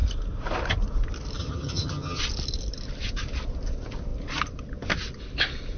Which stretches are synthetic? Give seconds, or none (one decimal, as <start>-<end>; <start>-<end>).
1.4-2.2